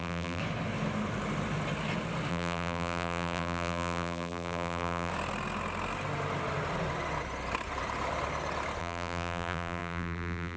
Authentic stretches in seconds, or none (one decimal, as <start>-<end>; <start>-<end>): 0.4-2.3; 5.1-8.8